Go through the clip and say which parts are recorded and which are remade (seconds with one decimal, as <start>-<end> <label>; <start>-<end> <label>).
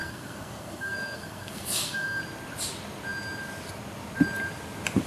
0.0-2.2 remade; 2.2-5.1 recorded